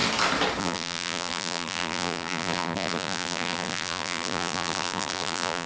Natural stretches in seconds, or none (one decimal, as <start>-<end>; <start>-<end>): 0.0-0.6

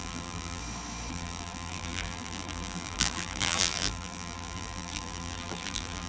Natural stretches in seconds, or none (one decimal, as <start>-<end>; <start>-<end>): 0.6-1.1

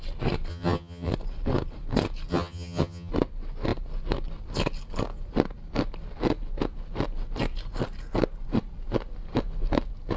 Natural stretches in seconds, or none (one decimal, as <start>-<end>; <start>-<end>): 0.0-0.5; 1.1-2.3; 3.1-10.2

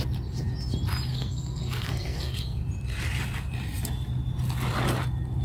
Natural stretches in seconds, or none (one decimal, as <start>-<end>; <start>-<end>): 0.0-1.1; 2.6-5.4

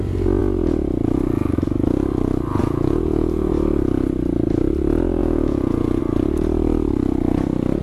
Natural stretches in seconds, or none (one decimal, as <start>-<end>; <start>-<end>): 0.0-2.6; 3.5-5.2; 6.0-7.8

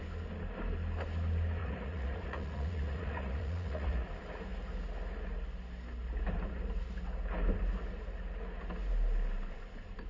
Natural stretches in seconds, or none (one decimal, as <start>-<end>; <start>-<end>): 0.0-1.6; 4.1-10.1